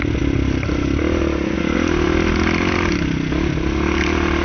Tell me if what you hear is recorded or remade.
recorded